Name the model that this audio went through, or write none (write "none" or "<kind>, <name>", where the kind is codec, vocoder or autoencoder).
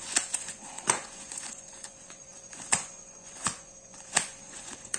vocoder, Vocos